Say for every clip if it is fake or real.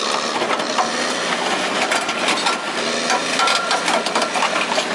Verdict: real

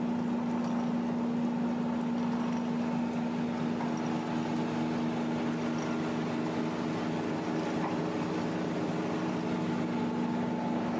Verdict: real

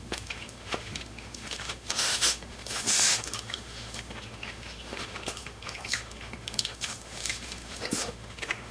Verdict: fake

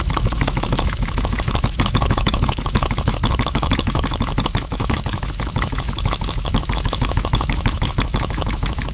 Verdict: fake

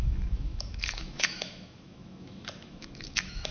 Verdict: fake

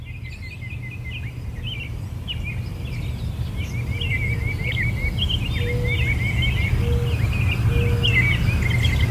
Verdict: real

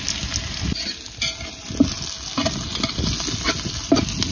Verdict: real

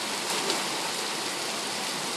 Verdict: real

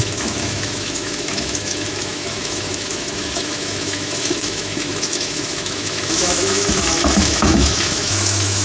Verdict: fake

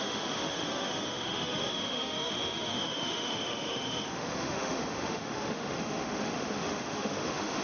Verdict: fake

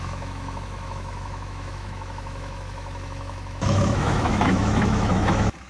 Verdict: fake